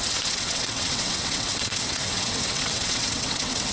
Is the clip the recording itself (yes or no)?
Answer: no